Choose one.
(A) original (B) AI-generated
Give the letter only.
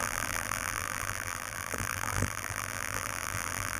B